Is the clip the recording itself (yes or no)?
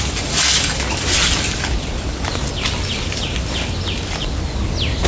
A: yes